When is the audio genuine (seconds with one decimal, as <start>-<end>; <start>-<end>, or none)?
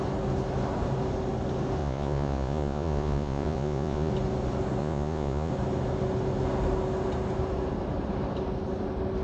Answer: 0.0-1.8; 4.1-4.8; 5.5-9.2